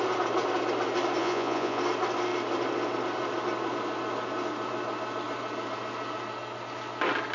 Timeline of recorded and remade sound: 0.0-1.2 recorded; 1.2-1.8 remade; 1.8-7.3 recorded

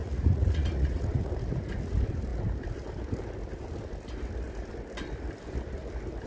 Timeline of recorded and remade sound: 0.0-1.3 remade; 1.3-6.3 recorded